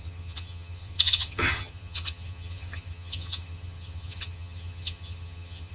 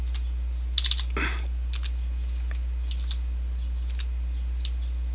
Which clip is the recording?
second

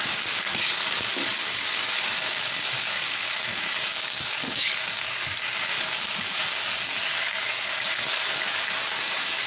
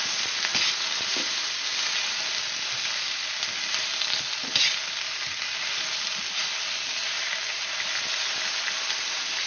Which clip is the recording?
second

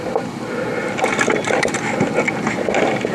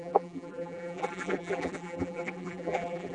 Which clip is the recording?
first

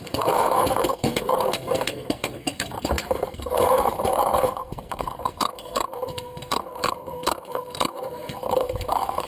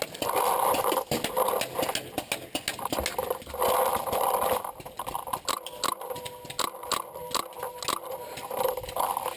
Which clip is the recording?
second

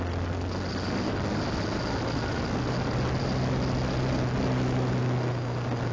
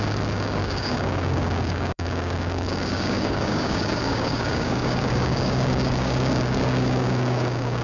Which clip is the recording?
first